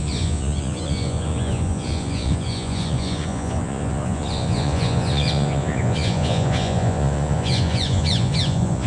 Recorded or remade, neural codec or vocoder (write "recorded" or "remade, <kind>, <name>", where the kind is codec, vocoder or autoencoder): remade, vocoder, Vocos